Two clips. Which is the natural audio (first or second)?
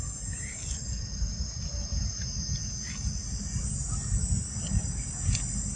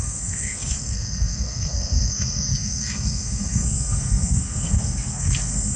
first